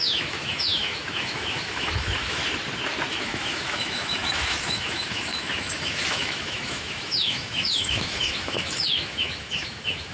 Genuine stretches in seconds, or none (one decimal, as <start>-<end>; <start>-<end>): 2.4-3.1